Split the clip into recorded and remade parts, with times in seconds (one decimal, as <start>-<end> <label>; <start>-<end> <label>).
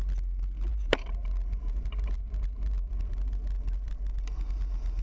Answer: 0.0-0.7 recorded; 0.7-2.9 remade; 2.9-5.0 recorded